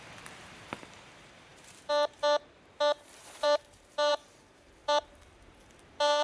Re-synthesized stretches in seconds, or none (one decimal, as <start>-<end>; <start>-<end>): 0.0-6.2